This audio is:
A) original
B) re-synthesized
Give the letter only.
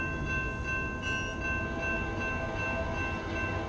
A